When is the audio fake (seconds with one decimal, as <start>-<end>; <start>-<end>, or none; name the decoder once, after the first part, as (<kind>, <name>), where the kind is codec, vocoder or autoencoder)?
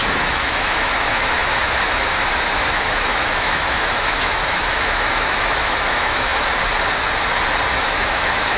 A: 0.0-6.3 (autoencoder, DAC-VAE); 7.8-8.6